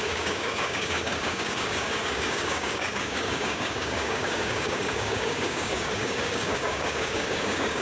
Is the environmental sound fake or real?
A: fake